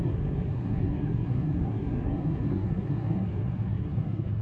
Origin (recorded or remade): remade